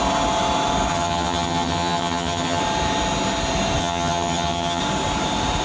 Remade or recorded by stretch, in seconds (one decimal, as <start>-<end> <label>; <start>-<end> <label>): 0.0-0.9 recorded; 0.9-2.6 remade; 2.6-3.8 recorded; 3.8-4.8 remade; 4.8-5.6 recorded